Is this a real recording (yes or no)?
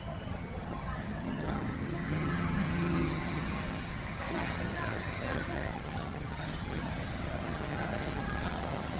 no